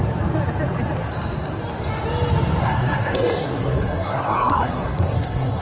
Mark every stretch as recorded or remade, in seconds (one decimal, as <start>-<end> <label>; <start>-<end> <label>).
0.0-2.6 recorded; 2.6-5.6 remade